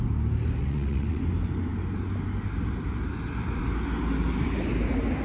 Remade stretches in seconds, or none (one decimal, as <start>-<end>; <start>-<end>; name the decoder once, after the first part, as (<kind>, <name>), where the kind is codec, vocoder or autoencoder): 0.6-1.2 (vocoder, WaveNeXt)